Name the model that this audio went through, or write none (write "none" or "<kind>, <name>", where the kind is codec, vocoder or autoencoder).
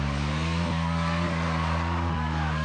codec, DAC